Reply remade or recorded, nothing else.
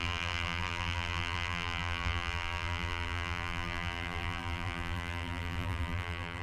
remade